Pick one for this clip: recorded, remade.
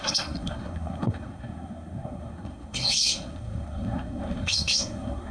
remade